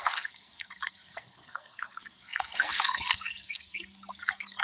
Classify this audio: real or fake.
fake